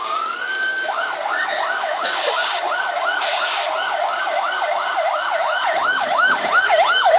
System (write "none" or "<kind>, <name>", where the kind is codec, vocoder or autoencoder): codec, DAC